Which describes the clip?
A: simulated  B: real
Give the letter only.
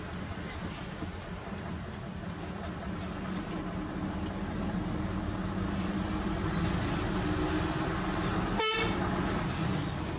B